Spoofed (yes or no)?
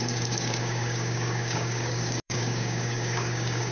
yes